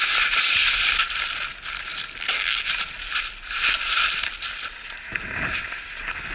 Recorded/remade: recorded